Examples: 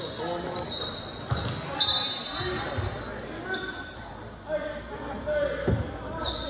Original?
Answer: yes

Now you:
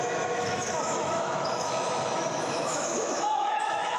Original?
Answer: no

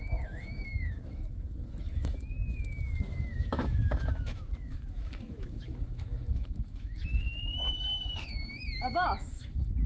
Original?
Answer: no